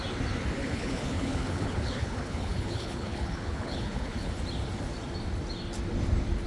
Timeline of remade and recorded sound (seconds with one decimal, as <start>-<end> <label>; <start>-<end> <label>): 0.0-0.6 recorded; 0.6-4.3 remade; 4.3-6.5 recorded